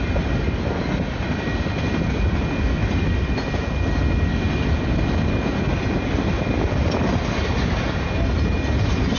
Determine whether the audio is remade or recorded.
recorded